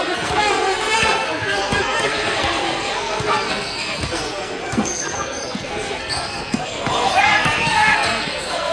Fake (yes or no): yes